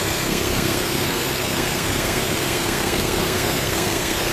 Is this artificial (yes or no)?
yes